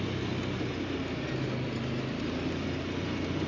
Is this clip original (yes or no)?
yes